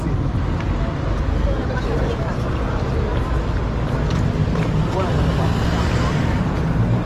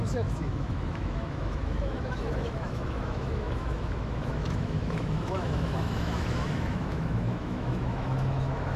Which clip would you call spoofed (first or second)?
second